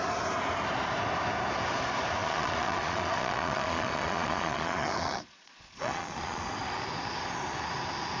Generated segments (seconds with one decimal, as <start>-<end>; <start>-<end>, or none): 2.2-6.4